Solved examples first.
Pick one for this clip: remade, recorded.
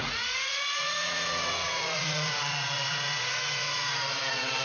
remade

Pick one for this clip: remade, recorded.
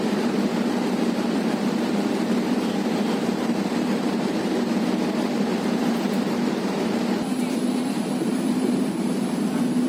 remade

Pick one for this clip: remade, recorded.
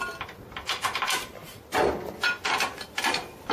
recorded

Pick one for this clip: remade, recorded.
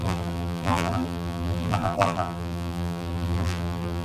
remade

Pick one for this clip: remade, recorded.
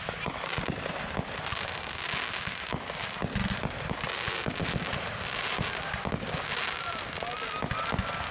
recorded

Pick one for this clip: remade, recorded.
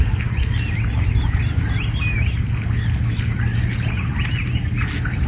recorded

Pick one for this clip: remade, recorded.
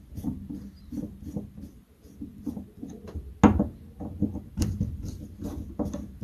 recorded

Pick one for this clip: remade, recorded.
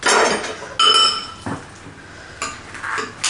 recorded